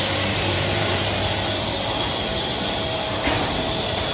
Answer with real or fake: fake